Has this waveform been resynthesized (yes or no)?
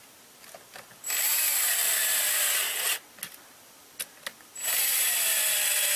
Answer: no